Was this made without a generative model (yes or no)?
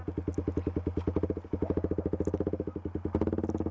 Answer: yes